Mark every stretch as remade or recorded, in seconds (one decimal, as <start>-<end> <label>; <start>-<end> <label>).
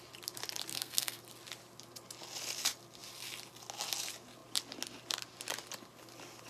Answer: 0.0-0.7 recorded; 0.7-1.2 remade; 1.2-6.5 recorded